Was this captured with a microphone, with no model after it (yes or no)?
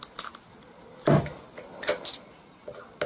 yes